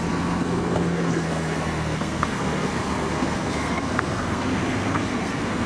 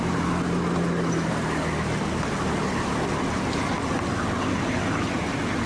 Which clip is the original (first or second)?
second